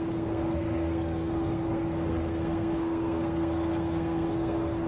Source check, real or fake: fake